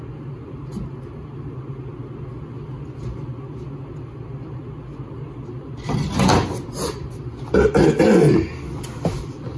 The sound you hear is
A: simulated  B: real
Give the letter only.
B